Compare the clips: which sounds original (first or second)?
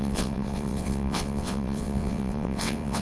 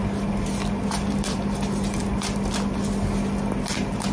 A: second